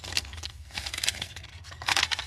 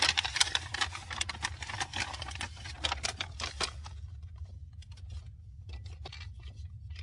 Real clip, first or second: second